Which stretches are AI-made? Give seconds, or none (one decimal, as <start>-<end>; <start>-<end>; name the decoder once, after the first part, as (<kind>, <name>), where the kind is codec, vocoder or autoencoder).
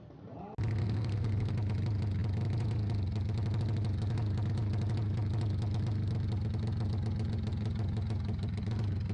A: 0.8-1.5 (codec, SNAC)